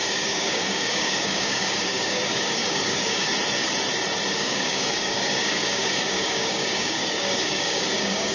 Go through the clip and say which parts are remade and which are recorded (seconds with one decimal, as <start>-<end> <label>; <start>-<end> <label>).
0.0-3.3 remade; 3.3-4.3 recorded; 4.3-8.3 remade